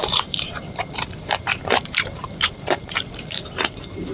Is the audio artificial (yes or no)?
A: yes